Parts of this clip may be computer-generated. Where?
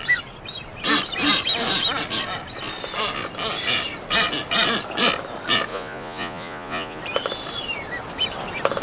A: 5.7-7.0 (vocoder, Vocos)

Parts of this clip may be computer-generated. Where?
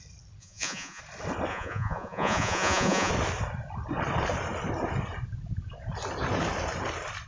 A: 0.4-1.0 (vocoder, Vocos); 1.5-3.1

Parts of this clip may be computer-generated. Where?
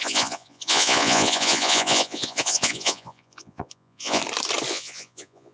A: 0.0-4.2 (vocoder, Vocos); 4.7-5.5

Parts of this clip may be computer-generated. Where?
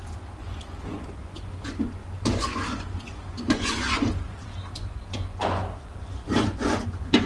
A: 0.0-7.3 (vocoder, Vocos)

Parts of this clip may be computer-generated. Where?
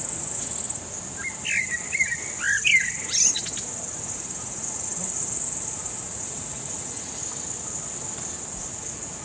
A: 0.0-0.5 (vocoder, Vocos); 4.0-7.2; 8.7-9.2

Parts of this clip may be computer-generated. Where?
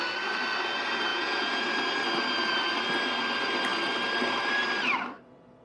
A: 1.1-1.6 (vocoder, Vocos)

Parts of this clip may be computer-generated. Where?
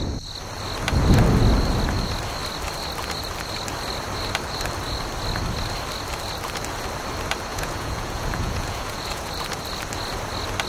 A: 7.5-9.3 (vocoder, Vocos)